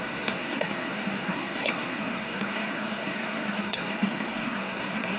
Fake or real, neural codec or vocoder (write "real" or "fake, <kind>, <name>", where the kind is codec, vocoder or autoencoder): fake, codec, SNAC